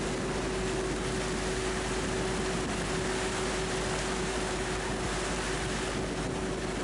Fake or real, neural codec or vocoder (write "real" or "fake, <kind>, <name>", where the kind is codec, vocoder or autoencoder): real